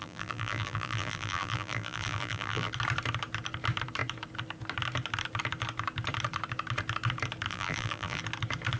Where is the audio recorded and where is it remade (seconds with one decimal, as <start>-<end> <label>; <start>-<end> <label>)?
0.0-2.7 remade; 2.7-7.5 recorded; 7.5-8.2 remade; 8.2-8.8 recorded